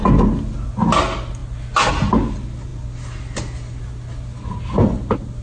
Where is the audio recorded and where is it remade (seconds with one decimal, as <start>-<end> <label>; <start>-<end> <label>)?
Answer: 0.0-5.4 recorded

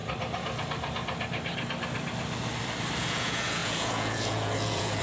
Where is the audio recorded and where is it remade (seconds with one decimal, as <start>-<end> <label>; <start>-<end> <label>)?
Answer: 0.0-3.0 recorded; 3.0-5.0 remade

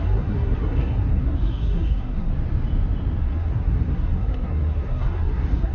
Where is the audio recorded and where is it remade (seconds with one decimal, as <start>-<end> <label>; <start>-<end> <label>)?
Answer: 0.0-2.3 remade; 2.3-3.2 recorded; 3.2-5.7 remade

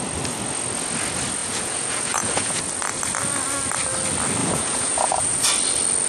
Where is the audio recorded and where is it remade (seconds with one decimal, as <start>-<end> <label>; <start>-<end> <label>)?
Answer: 0.0-1.4 recorded; 1.4-2.6 remade; 2.6-4.4 recorded; 4.4-5.5 remade; 5.5-6.1 recorded

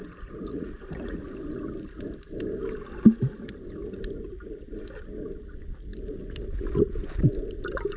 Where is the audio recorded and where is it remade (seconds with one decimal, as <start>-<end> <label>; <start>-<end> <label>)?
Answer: 0.0-0.5 recorded; 0.5-1.2 remade; 1.2-8.0 recorded

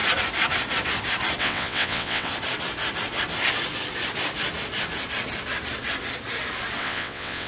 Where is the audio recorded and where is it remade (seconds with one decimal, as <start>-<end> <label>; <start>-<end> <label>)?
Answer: 0.0-1.4 recorded; 1.4-2.3 remade; 2.3-6.8 recorded; 6.8-7.5 remade